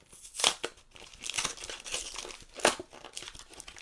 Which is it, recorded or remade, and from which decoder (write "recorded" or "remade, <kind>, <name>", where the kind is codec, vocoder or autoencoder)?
recorded